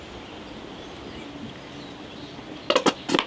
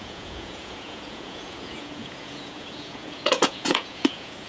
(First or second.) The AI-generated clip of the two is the second